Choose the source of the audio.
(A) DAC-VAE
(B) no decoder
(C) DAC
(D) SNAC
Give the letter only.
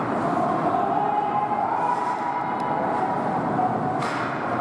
B